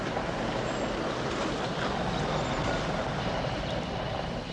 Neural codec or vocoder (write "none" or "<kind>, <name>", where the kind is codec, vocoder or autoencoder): none